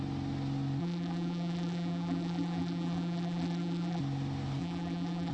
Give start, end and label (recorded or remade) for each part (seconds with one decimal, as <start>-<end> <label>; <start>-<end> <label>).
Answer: 0.0-0.8 recorded; 0.8-4.0 remade; 4.0-4.6 recorded; 4.6-5.3 remade